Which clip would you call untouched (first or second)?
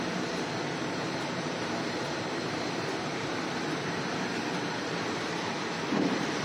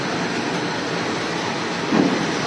second